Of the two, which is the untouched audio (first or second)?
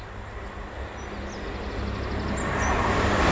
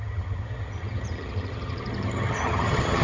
first